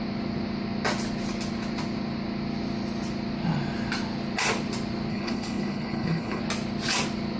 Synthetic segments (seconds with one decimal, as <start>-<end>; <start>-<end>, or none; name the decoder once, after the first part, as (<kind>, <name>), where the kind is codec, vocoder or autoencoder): 5.1-6.4 (codec, HILCodec)

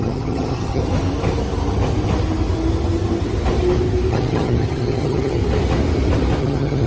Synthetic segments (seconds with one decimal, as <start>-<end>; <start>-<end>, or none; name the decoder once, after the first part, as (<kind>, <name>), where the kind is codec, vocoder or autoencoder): 0.0-0.8 (vocoder, HiFi-GAN); 4.1-5.4; 6.4-6.9